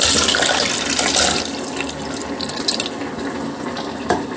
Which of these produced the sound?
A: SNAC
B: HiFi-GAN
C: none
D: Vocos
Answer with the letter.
C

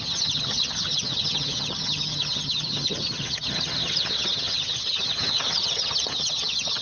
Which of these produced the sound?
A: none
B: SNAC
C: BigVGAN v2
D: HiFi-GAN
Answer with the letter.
D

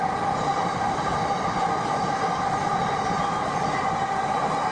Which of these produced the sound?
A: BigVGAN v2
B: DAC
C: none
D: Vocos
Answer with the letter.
C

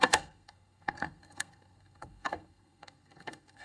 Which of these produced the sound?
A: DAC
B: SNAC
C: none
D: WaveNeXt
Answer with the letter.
B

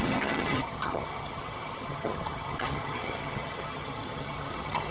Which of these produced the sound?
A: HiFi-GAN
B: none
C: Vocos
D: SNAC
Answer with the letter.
A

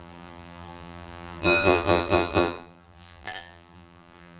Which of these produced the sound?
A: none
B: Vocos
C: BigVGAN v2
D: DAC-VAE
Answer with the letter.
C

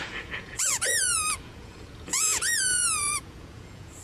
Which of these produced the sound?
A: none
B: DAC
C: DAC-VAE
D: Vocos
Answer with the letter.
D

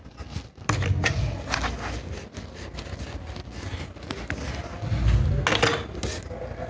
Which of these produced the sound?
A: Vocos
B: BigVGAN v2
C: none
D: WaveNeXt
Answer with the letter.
C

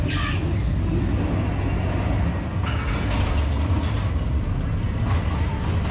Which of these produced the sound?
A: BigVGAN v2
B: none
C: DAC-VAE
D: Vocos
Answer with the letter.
B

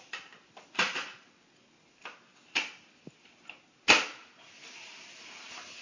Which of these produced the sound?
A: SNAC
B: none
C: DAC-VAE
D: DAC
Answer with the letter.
B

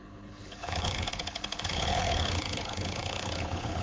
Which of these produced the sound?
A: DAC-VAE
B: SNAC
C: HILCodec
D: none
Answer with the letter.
C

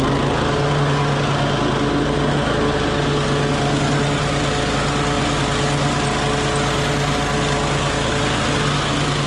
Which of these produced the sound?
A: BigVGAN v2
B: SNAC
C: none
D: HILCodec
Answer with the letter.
C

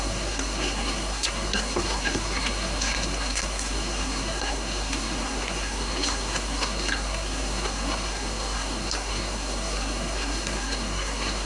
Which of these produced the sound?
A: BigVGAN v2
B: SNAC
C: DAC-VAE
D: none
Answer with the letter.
B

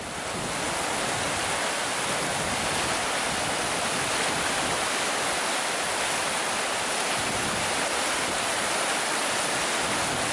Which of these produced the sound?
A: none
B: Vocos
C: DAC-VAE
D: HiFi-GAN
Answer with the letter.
A